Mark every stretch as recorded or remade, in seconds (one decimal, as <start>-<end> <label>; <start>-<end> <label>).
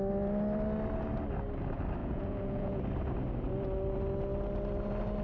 0.0-2.0 recorded; 2.0-2.8 remade; 2.8-5.2 recorded